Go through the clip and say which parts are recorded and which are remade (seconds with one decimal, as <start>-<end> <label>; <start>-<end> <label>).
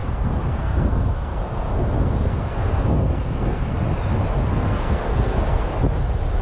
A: 0.0-3.8 remade; 3.8-4.4 recorded; 4.4-5.7 remade; 5.7-6.4 recorded